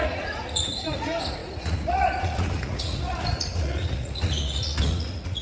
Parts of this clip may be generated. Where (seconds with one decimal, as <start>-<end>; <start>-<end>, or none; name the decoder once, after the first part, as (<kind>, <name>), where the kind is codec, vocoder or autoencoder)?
0.0-5.4 (vocoder, Vocos)